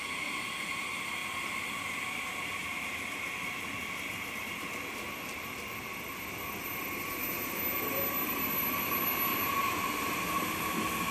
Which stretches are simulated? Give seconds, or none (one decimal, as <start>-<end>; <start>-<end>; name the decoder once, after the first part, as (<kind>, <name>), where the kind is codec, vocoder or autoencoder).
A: none